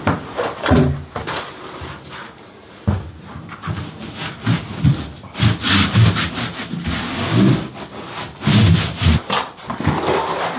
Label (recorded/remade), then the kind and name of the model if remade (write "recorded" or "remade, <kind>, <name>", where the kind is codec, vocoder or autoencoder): recorded